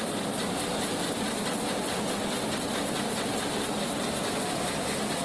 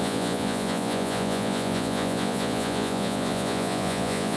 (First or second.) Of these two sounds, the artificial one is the second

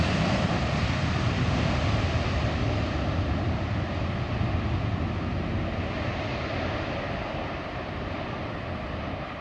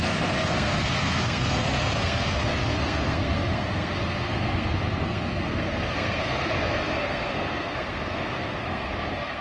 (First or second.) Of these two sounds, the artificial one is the second